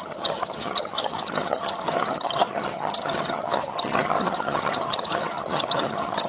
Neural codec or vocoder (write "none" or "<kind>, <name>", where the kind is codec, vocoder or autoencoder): vocoder, HiFi-GAN